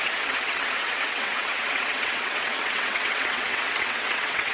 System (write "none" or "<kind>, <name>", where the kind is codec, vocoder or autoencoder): vocoder, WaveNeXt